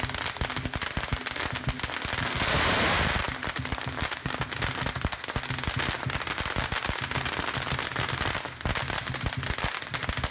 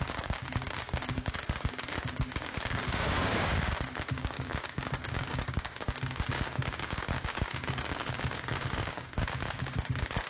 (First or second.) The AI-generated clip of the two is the second